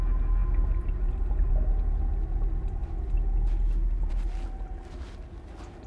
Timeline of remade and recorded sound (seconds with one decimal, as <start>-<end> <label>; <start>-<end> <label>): 0.0-5.9 recorded